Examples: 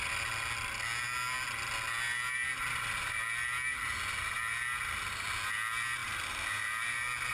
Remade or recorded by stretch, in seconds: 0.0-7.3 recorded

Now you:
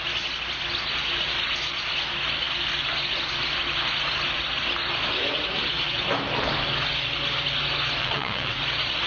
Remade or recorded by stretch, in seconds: 0.0-8.0 recorded; 8.0-8.6 remade; 8.6-9.1 recorded

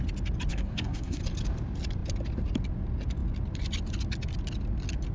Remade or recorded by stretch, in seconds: 0.0-0.5 recorded; 0.5-1.2 remade; 1.2-5.1 recorded

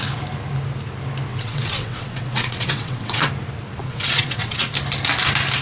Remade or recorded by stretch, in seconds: 0.0-1.3 recorded; 1.3-3.3 remade; 3.3-3.8 recorded; 3.8-4.7 remade; 4.7-5.6 recorded

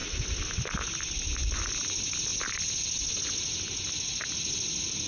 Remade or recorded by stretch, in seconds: 0.0-5.1 recorded

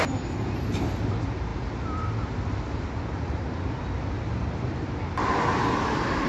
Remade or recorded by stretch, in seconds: 0.0-6.3 recorded

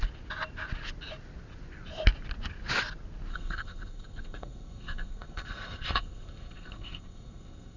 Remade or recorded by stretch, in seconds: 0.0-3.3 recorded; 3.3-7.8 remade

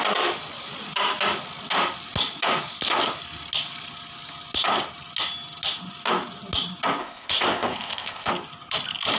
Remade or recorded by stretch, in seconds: 0.0-7.0 recorded; 7.0-8.3 remade; 8.3-9.2 recorded